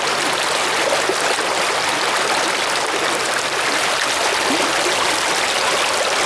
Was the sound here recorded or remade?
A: recorded